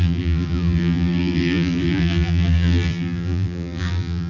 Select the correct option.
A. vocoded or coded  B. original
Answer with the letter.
A